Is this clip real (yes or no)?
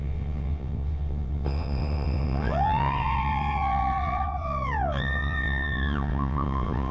no